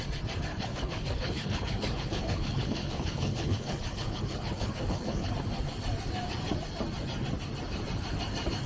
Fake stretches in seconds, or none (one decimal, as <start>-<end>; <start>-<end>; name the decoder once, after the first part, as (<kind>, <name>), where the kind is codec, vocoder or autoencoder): 0.5-5.3 (codec, HILCodec)